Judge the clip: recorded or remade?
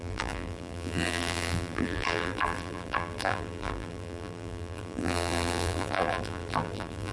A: remade